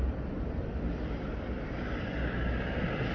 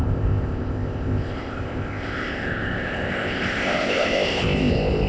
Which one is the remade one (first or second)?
second